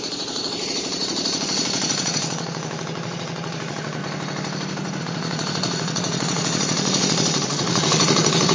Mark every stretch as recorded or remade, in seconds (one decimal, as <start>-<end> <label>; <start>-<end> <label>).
0.0-4.0 remade; 4.0-5.0 recorded; 5.0-8.5 remade